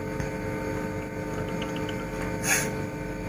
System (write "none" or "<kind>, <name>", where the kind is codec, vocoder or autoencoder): none